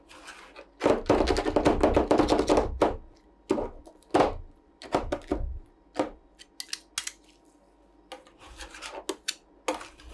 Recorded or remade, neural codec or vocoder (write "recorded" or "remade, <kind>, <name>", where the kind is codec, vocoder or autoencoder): recorded